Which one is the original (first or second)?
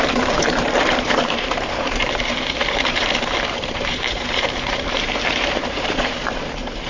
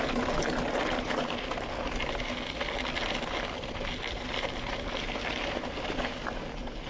second